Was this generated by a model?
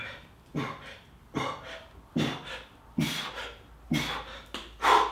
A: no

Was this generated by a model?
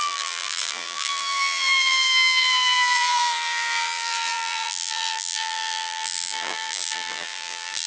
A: yes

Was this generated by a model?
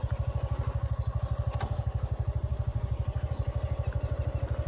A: no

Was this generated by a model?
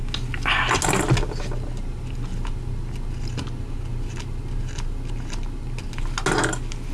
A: no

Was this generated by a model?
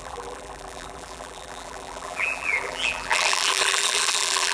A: yes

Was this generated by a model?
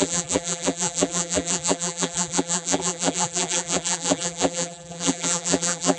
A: yes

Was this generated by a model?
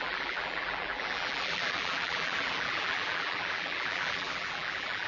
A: yes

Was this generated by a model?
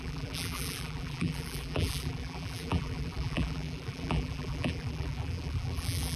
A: yes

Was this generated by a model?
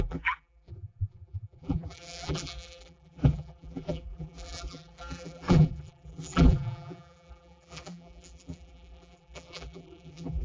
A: yes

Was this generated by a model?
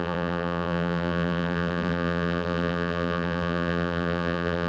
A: yes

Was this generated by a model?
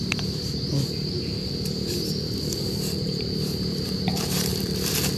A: yes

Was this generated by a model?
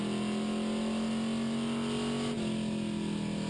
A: no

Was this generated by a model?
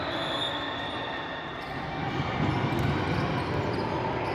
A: no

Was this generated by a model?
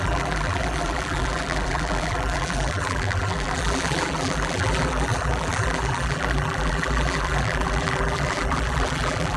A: yes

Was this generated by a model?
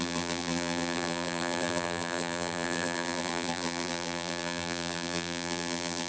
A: yes